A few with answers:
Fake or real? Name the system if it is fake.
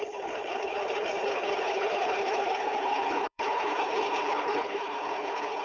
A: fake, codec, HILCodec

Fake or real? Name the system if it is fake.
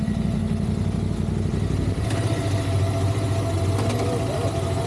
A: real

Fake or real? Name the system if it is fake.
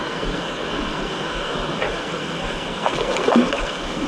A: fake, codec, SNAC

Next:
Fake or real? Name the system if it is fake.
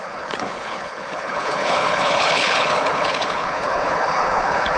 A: fake, codec, HILCodec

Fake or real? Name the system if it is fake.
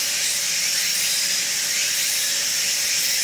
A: real